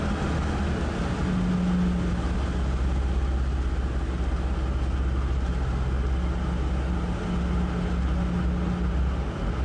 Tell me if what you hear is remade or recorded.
recorded